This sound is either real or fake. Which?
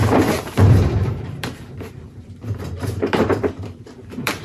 fake